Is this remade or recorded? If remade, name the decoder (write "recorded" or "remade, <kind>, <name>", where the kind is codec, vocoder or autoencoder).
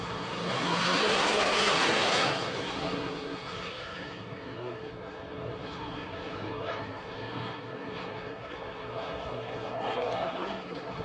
remade, codec, SNAC